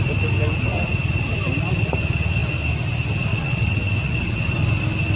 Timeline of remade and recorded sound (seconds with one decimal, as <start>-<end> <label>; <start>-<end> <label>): 0.0-3.3 recorded; 3.3-4.4 remade; 4.4-5.2 recorded